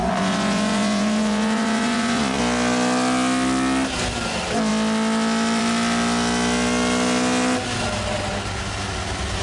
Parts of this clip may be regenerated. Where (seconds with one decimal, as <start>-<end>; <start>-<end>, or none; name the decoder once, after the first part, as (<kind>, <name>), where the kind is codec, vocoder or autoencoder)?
0.0-2.4 (vocoder, Vocos)